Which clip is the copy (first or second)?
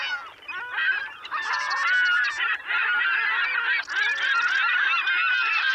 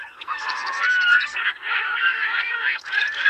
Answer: second